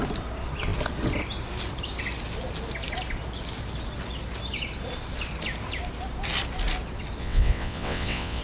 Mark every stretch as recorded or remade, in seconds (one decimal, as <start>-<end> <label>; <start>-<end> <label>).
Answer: 0.0-7.2 recorded; 7.2-8.4 remade